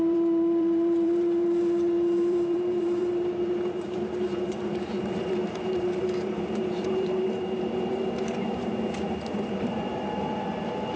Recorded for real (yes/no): no